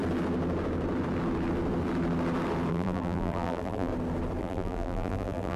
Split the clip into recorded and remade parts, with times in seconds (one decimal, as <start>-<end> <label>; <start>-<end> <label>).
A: 0.0-2.7 recorded; 2.7-3.9 remade; 3.9-4.4 recorded; 4.4-5.6 remade

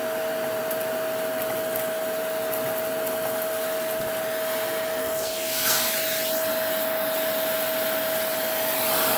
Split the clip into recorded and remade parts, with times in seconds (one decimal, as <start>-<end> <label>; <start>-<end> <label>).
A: 0.0-5.0 recorded; 5.0-5.9 remade; 5.9-9.2 recorded

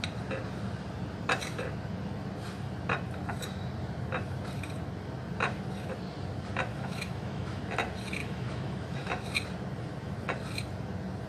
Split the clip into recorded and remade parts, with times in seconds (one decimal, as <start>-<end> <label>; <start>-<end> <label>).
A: 0.0-6.7 recorded; 6.7-7.6 remade; 7.6-8.2 recorded; 8.2-9.3 remade; 9.3-11.3 recorded

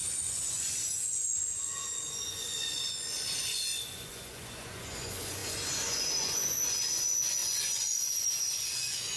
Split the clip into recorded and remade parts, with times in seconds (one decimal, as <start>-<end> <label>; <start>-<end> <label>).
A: 0.0-9.2 remade

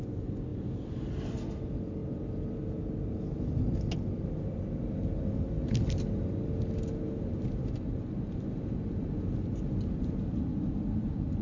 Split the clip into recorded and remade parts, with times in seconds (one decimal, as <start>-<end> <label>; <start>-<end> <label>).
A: 0.0-11.4 recorded